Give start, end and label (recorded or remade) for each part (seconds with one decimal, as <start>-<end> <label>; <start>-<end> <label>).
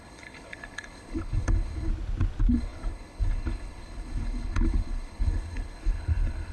0.0-1.9 remade; 1.9-2.5 recorded; 2.5-6.5 remade